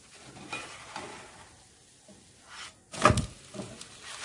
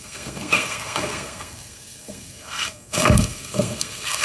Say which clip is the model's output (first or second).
second